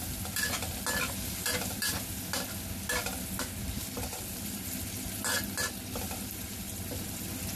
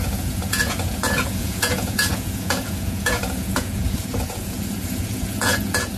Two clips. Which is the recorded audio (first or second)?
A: first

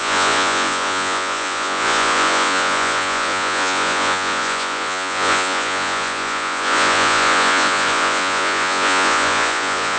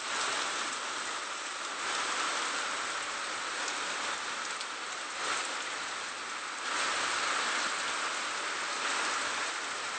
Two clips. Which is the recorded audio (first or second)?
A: second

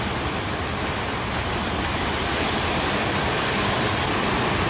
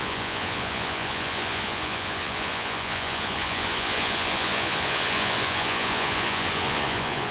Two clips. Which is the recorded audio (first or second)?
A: first